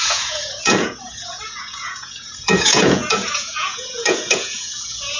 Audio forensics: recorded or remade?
remade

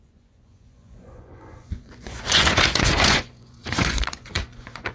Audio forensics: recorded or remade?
remade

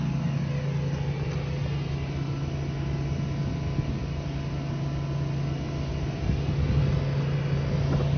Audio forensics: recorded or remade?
recorded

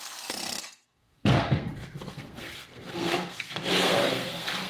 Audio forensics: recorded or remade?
remade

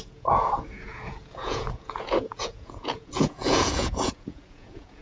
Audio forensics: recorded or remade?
remade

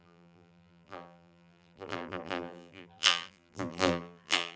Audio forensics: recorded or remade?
remade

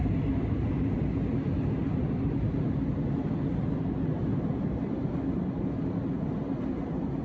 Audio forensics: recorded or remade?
recorded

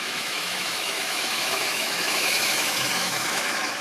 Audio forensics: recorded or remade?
remade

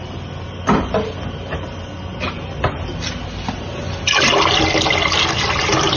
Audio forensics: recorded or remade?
recorded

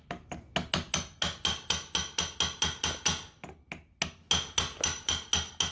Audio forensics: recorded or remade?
recorded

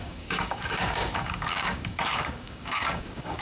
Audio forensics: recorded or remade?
remade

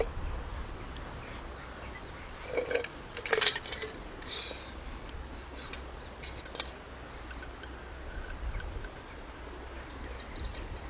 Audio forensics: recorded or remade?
recorded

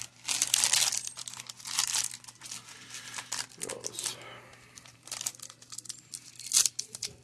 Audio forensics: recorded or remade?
remade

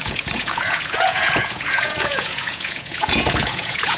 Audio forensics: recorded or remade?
remade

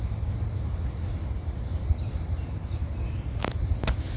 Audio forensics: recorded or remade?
recorded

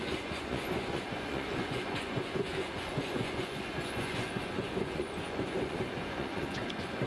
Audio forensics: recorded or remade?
remade